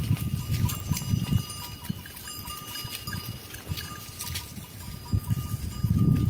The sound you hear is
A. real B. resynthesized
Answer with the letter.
A